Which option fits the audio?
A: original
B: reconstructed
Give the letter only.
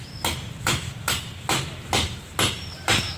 A